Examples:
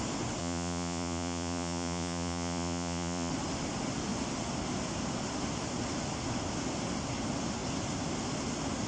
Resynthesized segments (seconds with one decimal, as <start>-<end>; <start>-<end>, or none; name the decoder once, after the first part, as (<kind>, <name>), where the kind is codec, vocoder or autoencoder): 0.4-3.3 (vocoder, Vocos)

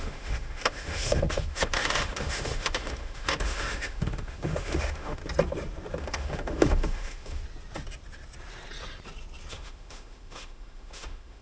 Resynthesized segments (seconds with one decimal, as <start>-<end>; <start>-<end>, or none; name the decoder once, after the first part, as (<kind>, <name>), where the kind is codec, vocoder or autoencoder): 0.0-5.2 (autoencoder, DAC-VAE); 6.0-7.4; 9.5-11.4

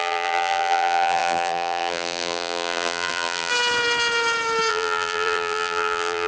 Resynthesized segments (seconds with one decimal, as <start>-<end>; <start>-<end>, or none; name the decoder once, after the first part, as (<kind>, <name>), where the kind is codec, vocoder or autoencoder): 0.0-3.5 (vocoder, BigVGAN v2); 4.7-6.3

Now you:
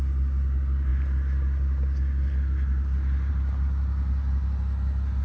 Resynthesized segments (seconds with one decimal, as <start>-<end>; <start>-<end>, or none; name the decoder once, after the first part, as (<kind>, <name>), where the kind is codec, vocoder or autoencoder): none

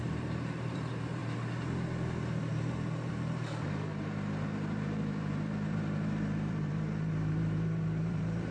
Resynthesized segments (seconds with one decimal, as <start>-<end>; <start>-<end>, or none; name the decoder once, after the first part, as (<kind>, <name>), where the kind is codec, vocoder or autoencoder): 0.0-1.2 (vocoder, BigVGAN v2); 3.1-8.5